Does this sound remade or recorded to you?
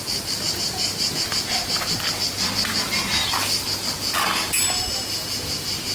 recorded